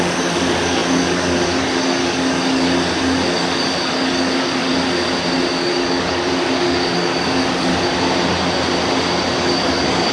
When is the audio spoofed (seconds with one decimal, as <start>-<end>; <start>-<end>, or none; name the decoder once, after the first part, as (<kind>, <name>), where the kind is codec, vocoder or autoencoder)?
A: 0.0-4.7 (codec, DAC); 5.6-7.7; 9.4-10.1

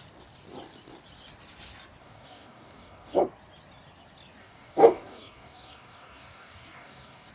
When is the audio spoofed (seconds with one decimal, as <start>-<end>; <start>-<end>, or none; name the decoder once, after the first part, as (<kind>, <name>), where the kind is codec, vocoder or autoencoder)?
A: 2.0-3.2 (codec, DAC); 4.4-7.3

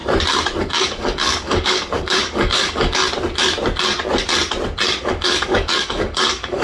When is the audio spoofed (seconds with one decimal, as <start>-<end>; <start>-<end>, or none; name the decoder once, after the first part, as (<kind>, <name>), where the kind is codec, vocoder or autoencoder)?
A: 0.6-3.0 (codec, DAC); 5.0-6.6

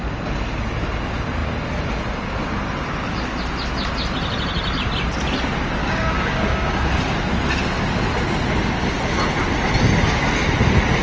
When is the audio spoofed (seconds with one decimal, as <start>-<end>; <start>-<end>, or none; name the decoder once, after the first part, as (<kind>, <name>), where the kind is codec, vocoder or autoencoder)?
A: 5.8-6.8 (codec, DAC)